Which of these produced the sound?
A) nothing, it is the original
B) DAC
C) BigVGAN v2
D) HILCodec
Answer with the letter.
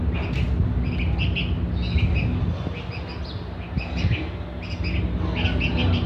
A